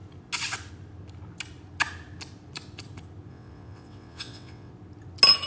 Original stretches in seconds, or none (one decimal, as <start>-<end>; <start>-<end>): 0.0-3.3; 4.7-5.5